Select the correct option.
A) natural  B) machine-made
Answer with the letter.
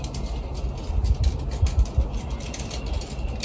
A